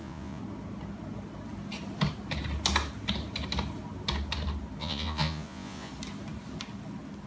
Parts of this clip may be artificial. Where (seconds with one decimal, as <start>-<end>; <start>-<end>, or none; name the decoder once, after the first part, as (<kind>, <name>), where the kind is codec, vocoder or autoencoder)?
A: 0.0-0.4 (vocoder, Vocos); 4.8-5.9